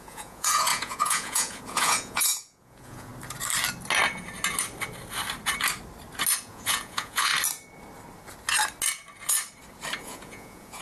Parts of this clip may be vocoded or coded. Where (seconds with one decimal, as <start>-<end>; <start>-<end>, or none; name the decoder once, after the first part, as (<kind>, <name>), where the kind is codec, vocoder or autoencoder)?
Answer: 0.0-3.1 (vocoder, Vocos); 6.4-7.3; 10.0-10.8